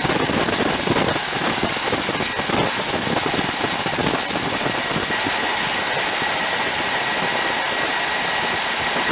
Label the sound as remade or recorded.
recorded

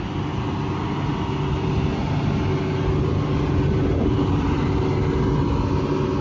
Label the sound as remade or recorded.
recorded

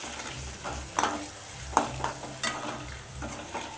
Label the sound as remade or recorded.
recorded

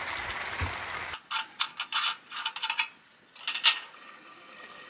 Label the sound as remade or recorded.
recorded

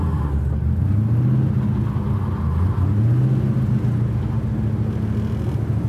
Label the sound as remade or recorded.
recorded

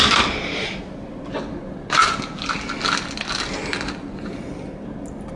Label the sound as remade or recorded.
recorded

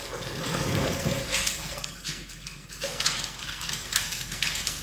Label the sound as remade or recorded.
remade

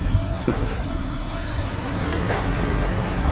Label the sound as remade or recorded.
remade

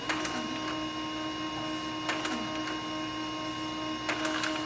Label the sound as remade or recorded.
recorded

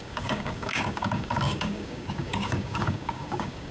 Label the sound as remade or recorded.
remade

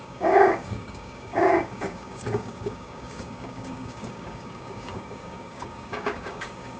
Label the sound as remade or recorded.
remade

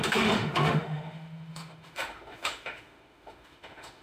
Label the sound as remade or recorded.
remade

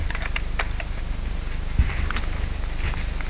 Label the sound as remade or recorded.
recorded